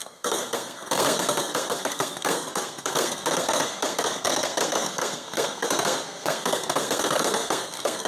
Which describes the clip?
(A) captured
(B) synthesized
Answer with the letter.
B